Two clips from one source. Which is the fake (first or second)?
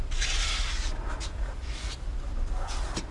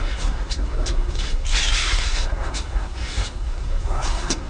second